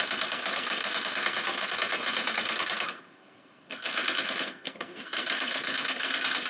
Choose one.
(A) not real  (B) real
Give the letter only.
A